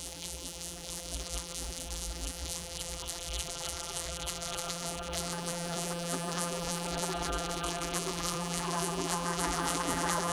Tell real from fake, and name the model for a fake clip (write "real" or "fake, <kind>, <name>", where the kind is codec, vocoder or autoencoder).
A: fake, vocoder, BigVGAN v2